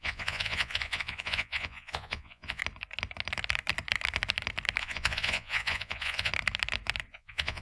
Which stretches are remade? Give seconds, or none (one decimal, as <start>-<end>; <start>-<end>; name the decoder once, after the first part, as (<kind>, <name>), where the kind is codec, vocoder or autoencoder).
0.0-2.6 (vocoder, Vocos); 4.8-6.3; 7.1-7.6